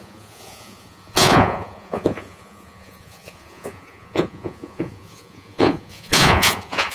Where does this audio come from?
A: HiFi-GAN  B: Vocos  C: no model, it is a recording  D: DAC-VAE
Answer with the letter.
B